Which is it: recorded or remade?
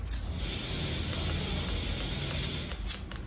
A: recorded